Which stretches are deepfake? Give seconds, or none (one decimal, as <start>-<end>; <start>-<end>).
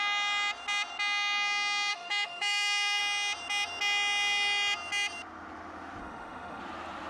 1.9-3.0; 6.0-6.6